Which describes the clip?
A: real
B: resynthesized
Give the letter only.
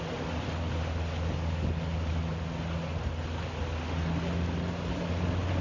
A